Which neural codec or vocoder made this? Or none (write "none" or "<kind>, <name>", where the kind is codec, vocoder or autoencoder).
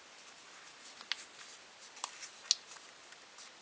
none